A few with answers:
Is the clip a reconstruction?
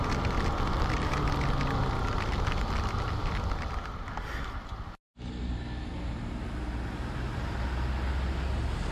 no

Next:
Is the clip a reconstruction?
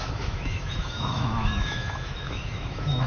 yes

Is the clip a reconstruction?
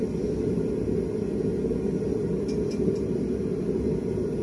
no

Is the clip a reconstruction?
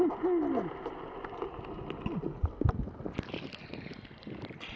no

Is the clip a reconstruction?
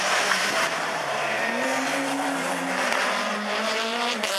yes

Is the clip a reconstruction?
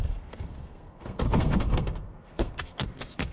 yes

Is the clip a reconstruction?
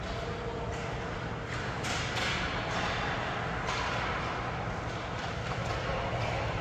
no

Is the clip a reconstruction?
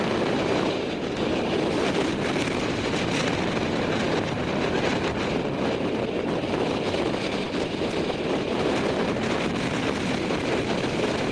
yes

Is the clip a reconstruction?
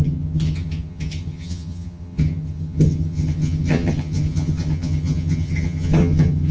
yes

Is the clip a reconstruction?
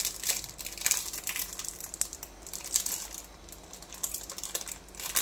no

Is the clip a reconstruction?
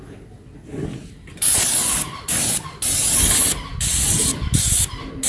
no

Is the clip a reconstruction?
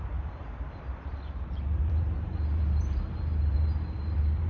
yes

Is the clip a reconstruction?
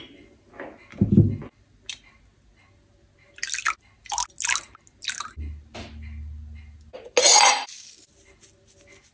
no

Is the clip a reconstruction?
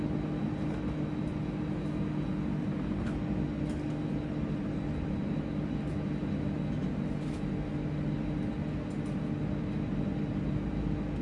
no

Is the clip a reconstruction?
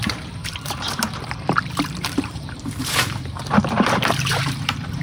yes